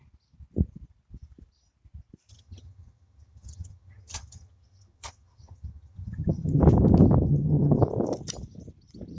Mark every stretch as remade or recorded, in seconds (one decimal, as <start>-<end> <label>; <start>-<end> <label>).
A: 0.0-2.3 recorded; 2.3-6.6 remade; 6.6-7.3 recorded; 7.3-7.8 remade; 7.8-9.2 recorded